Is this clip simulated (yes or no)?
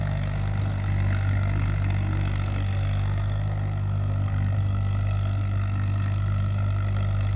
yes